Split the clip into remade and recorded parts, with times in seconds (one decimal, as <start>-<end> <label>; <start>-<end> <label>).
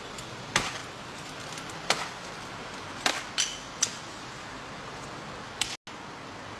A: 0.0-6.6 recorded